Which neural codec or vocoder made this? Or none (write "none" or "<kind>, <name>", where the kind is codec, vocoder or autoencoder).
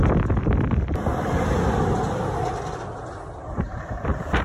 none